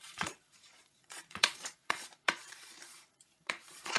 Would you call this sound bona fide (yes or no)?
no